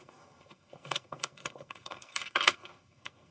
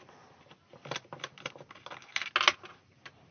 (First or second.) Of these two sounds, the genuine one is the second